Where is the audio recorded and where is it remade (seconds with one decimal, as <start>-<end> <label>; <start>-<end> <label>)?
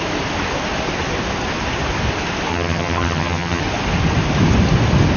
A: 0.0-2.5 recorded; 2.5-3.6 remade; 3.6-5.2 recorded